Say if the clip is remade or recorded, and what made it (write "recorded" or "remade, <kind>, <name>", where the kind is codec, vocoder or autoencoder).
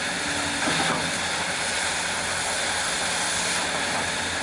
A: recorded